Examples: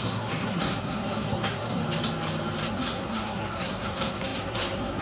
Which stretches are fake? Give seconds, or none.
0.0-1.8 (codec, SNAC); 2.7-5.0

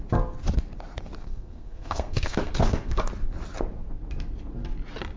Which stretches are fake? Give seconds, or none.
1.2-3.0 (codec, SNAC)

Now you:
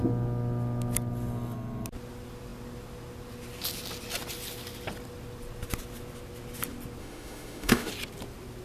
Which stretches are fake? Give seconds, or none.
7.0-7.9 (autoencoder, DAC-VAE)

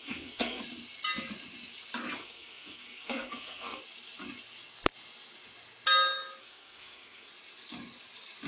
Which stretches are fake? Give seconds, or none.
0.0-0.6 (codec, SNAC); 2.2-3.8; 6.4-7.3

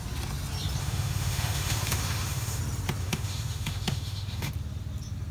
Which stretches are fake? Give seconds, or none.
0.8-2.6 (autoencoder, DAC-VAE); 3.0-4.5

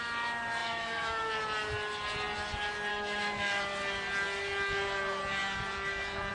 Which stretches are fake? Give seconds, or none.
0.6-1.3 (autoencoder, DAC-VAE); 2.9-3.6